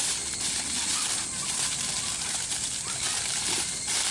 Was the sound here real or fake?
real